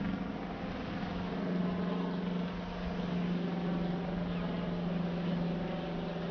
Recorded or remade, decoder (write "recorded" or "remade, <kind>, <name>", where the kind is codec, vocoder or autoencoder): recorded